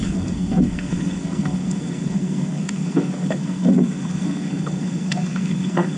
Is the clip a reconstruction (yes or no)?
yes